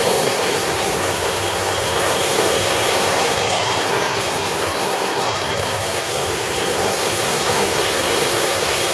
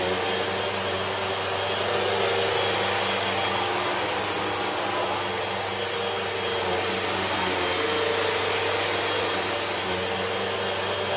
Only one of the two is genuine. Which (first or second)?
second